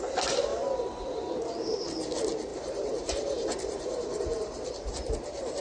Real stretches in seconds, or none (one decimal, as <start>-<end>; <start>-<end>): 0.0-0.5; 1.3-2.5; 4.9-5.6